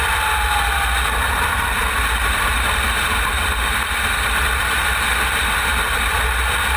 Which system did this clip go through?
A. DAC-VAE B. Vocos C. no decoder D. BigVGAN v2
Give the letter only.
C